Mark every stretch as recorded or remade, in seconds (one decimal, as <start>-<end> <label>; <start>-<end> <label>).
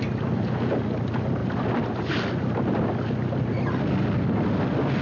0.0-5.0 recorded